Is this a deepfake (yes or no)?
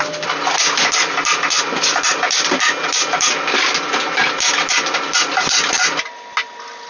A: no